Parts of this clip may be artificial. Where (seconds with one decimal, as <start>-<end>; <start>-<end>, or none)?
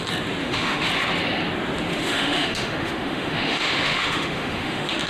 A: 0.4-0.9; 1.9-5.1